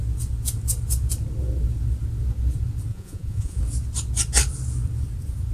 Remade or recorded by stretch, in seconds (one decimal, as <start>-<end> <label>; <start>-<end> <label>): 0.0-2.9 recorded; 2.9-3.6 remade; 3.6-5.5 recorded